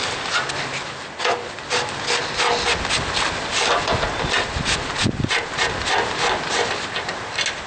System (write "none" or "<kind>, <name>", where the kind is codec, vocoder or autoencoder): none